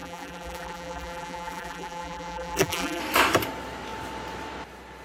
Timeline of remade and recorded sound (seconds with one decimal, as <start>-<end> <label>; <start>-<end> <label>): 0.0-3.0 remade; 3.0-5.0 recorded